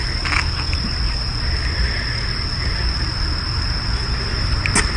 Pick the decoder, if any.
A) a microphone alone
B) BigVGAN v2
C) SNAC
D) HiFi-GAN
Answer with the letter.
A